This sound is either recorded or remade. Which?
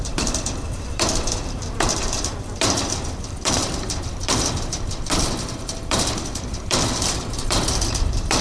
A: remade